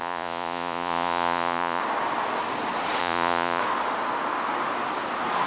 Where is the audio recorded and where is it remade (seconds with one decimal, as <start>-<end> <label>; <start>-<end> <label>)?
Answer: 0.0-1.8 remade; 1.8-3.0 recorded; 3.0-3.6 remade; 3.6-5.5 recorded